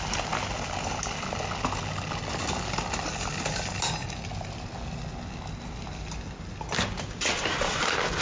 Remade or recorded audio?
recorded